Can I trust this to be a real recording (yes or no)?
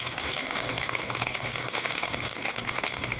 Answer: no